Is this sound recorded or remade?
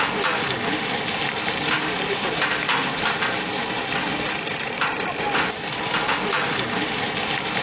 recorded